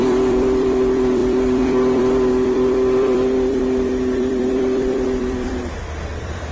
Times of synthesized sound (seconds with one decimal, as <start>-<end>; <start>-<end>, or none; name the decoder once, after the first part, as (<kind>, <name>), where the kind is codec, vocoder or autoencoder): 0.0-6.5 (vocoder, BigVGAN v2)